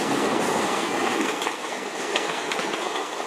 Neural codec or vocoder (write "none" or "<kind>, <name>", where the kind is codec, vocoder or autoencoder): codec, SNAC